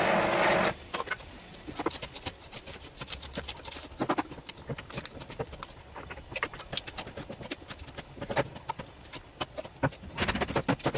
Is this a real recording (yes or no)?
yes